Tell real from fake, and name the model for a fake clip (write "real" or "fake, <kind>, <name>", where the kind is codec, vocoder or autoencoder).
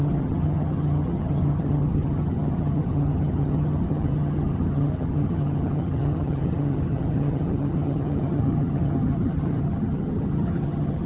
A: fake, vocoder, HiFi-GAN